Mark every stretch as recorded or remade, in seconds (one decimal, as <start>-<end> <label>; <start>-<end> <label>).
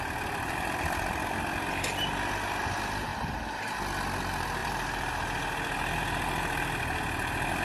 0.0-7.6 recorded